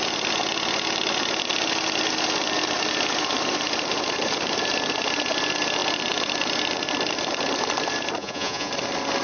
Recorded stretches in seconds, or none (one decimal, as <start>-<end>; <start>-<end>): 0.0-8.2; 8.7-9.2